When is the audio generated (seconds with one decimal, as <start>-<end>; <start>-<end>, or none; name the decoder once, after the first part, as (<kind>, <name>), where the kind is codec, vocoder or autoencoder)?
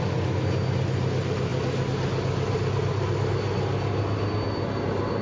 none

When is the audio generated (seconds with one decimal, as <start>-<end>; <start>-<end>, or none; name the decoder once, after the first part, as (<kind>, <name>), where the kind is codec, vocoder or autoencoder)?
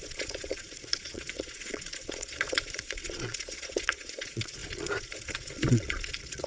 0.0-6.5 (vocoder, Vocos)